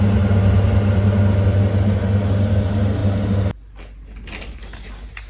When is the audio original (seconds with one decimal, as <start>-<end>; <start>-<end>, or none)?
0.0-5.3